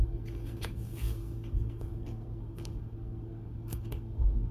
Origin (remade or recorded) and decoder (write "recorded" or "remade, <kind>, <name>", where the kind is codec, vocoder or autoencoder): remade, codec, SNAC